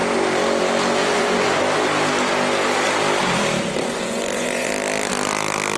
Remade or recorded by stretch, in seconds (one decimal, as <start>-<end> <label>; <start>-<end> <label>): 0.0-1.0 recorded; 1.0-1.6 remade; 1.6-3.8 recorded; 3.8-4.7 remade; 4.7-5.8 recorded